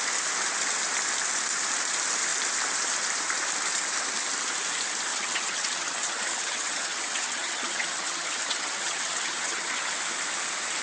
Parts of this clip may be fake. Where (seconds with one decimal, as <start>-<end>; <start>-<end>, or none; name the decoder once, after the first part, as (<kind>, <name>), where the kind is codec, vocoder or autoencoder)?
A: 5.1-9.9 (vocoder, HiFi-GAN)